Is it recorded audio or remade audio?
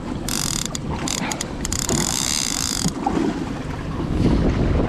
recorded